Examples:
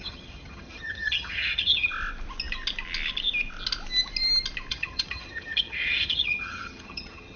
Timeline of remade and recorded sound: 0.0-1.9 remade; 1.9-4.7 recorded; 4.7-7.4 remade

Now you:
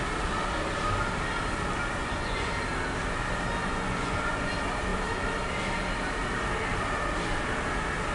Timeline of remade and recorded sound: 0.0-2.0 recorded; 2.0-2.5 remade; 2.5-3.6 recorded; 3.6-4.5 remade; 4.5-8.1 recorded

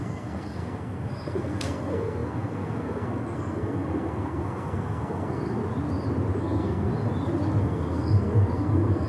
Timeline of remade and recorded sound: 0.0-5.6 remade; 5.6-6.4 recorded; 6.4-6.9 remade; 6.9-7.6 recorded; 7.6-9.1 remade

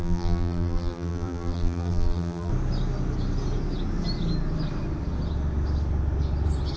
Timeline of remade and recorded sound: 0.0-2.5 remade; 2.5-6.8 recorded

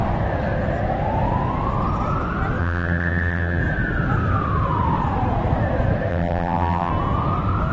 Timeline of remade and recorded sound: 0.0-2.6 recorded; 2.6-3.6 remade; 3.6-6.1 recorded; 6.1-6.9 remade; 6.9-7.7 recorded

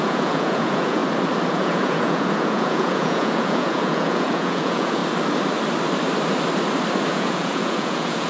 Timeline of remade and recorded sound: 0.0-1.0 remade; 1.0-1.5 recorded; 1.5-5.0 remade; 5.0-7.1 recorded; 7.1-8.3 remade

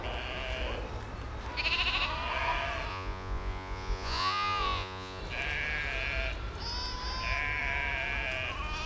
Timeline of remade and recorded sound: 0.0-2.9 recorded; 2.9-5.2 remade; 5.2-8.9 recorded

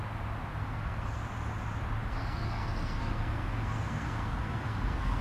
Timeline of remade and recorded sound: 0.0-0.6 recorded; 0.6-1.2 remade; 1.2-2.0 recorded; 2.0-5.2 remade